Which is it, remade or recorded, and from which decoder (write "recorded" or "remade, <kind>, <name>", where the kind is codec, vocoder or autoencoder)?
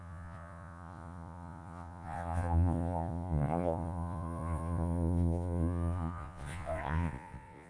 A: remade, vocoder, Vocos